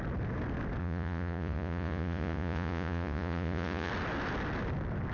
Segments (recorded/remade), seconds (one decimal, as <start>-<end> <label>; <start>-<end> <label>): 0.0-0.8 recorded; 0.8-3.9 remade; 3.9-5.1 recorded